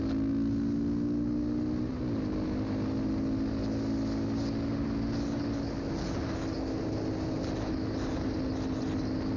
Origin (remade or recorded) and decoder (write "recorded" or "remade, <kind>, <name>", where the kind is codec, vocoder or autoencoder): recorded